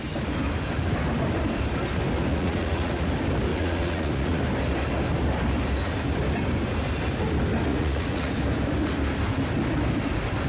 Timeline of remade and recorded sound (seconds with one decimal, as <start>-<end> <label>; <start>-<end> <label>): 0.0-2.3 recorded; 2.3-3.1 remade; 3.1-3.5 recorded; 3.5-4.4 remade; 4.4-7.7 recorded; 7.7-8.3 remade; 8.3-10.5 recorded